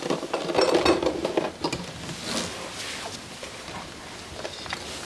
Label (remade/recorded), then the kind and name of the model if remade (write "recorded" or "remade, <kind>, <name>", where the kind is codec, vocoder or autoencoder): recorded